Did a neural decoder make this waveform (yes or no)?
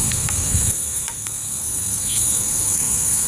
yes